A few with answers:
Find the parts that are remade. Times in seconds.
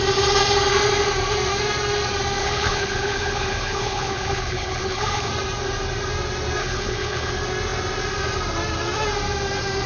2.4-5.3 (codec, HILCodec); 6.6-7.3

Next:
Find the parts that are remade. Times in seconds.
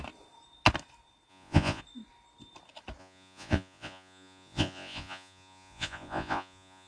1.3-1.8 (vocoder, Vocos); 3.0-6.9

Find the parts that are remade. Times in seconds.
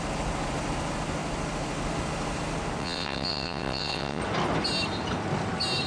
2.8-4.2 (vocoder, WaveNeXt)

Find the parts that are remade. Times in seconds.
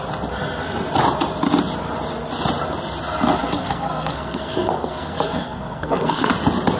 3.4-6.3 (codec, SNAC)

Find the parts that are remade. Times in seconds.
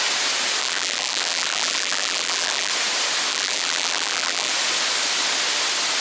0.6-2.7 (vocoder, BigVGAN v2); 3.3-4.5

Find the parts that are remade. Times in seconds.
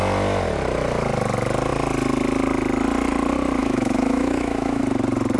3.6-4.8 (autoencoder, DAC-VAE)